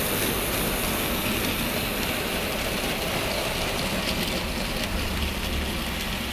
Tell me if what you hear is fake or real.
real